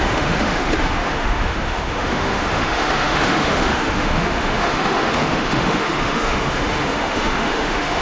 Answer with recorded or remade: remade